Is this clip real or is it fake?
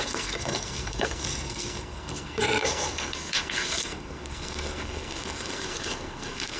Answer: fake